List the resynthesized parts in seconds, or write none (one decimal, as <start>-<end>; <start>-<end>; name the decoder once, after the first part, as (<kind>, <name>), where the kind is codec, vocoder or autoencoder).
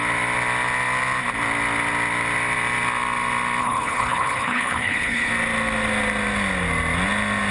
3.6-5.3 (codec, HILCodec)